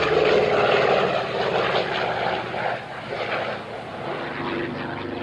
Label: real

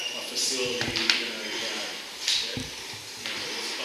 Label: real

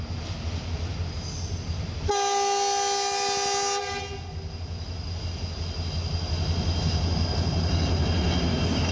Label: real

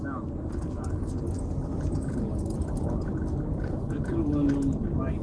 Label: real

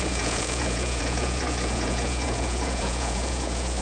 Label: fake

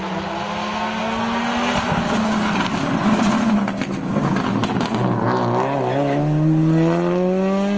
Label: real